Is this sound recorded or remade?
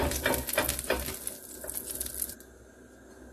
recorded